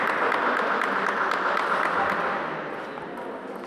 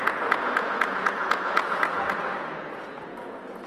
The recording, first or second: first